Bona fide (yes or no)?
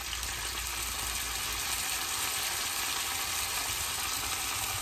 yes